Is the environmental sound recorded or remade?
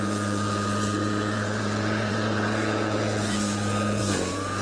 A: remade